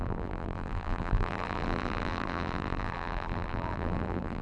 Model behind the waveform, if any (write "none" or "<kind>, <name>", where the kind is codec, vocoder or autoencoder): vocoder, BigVGAN v2